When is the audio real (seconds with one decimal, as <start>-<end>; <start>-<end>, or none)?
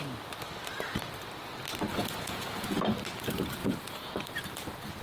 0.0-1.9; 2.8-3.6; 4.1-5.0